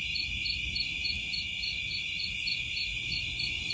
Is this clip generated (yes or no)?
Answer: no